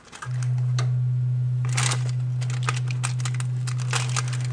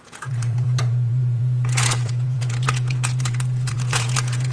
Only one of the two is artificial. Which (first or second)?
second